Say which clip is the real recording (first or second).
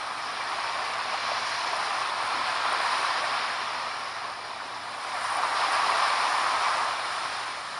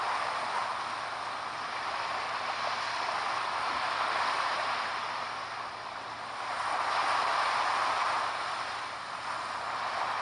second